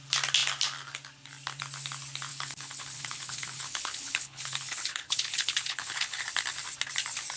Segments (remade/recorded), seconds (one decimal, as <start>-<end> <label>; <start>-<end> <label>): 0.0-2.3 recorded; 2.3-6.2 remade; 6.2-7.4 recorded